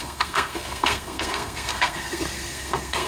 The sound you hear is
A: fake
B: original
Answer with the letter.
A